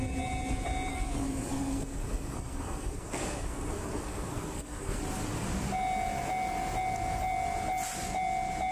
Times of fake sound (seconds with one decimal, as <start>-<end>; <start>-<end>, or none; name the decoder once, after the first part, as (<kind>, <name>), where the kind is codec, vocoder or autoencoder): 0.9-5.0 (codec, SNAC)